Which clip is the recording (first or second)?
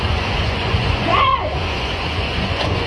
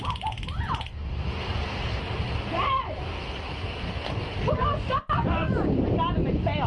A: second